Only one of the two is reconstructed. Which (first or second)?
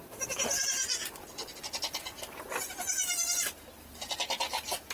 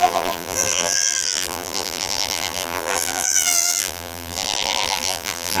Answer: second